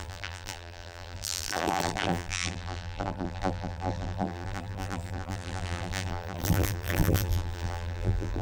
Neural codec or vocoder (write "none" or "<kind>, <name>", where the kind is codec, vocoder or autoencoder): vocoder, BigVGAN v2